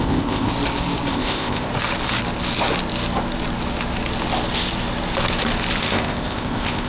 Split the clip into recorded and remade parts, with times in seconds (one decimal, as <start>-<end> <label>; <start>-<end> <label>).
0.0-0.5 remade; 0.5-1.1 recorded; 1.1-1.7 remade; 1.7-5.8 recorded; 5.8-6.9 remade